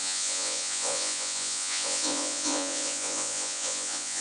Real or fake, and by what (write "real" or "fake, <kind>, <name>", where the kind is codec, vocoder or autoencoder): fake, vocoder, Vocos